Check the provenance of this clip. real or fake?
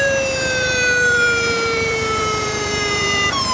fake